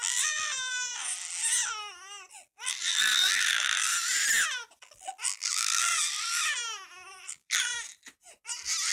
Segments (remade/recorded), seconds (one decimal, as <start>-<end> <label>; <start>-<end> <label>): 0.0-0.9 remade; 0.9-2.3 recorded; 2.3-3.9 remade; 3.9-4.8 recorded; 4.8-5.9 remade; 5.9-7.1 recorded; 7.1-7.7 remade; 7.7-8.9 recorded